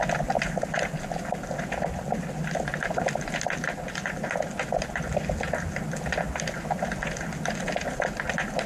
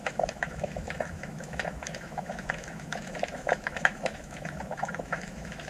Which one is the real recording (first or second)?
first